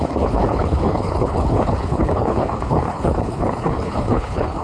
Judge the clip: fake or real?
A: fake